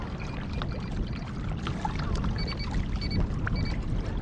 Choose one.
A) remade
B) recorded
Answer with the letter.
B